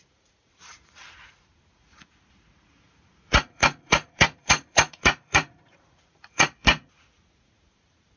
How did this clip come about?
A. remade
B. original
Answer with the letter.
A